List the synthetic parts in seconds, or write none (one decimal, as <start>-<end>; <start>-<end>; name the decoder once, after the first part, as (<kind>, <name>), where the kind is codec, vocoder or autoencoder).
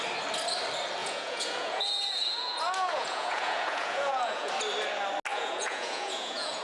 1.0-4.5 (vocoder, Vocos); 5.3-6.6